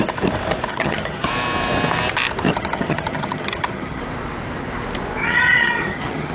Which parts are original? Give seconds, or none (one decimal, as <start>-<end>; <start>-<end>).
0.0-0.7; 1.3-2.5; 4.0-5.2